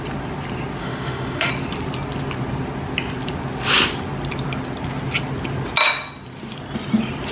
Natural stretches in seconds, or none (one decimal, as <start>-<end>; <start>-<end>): 0.0-0.8; 1.5-7.3